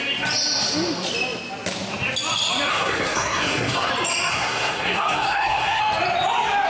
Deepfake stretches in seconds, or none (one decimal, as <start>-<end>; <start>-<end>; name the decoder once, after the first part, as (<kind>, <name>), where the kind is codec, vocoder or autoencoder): 2.7-3.9 (codec, SNAC); 4.3-5.8